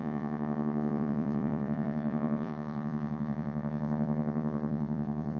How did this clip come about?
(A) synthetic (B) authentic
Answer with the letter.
A